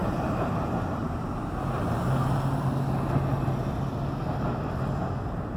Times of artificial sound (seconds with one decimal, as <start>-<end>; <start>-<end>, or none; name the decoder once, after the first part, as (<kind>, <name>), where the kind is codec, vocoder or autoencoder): 0.0-2.8 (vocoder, BigVGAN v2)

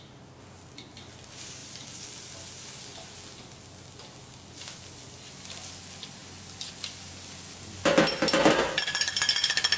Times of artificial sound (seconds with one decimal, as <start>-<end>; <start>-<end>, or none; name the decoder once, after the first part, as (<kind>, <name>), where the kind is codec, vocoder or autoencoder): none

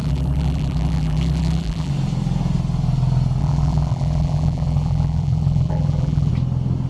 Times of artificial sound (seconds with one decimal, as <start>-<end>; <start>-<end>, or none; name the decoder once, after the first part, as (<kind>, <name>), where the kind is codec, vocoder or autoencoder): 0.0-1.9 (vocoder, BigVGAN v2); 3.4-6.3

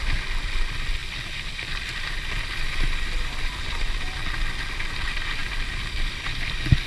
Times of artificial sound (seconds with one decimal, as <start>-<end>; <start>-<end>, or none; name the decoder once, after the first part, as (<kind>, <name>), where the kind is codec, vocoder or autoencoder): 1.0-4.2 (vocoder, BigVGAN v2); 5.4-6.9

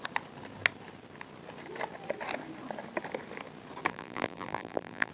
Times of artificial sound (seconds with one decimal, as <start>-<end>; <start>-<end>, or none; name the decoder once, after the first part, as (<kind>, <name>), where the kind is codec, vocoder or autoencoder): 3.9-5.1 (vocoder, BigVGAN v2)

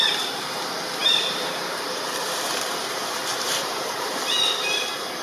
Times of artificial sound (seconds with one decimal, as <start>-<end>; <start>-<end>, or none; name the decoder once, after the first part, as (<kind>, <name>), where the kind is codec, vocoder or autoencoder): 1.0-4.1 (vocoder, BigVGAN v2)